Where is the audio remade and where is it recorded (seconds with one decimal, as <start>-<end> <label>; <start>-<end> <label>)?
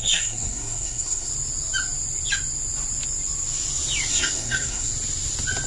0.0-1.3 remade; 1.3-4.1 recorded; 4.1-4.9 remade; 4.9-5.7 recorded